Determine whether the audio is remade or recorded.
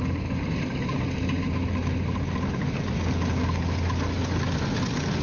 recorded